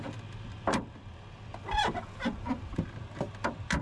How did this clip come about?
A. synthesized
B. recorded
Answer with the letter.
B